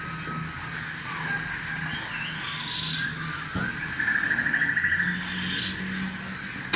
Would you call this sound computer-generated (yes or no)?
no